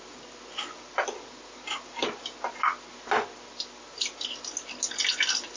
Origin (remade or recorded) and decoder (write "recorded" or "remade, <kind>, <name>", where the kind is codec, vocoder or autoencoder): recorded